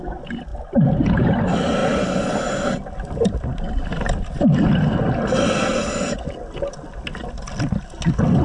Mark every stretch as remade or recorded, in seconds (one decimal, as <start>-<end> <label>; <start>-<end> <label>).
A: 0.0-8.4 recorded